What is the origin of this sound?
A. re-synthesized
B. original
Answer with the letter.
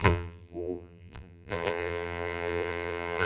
A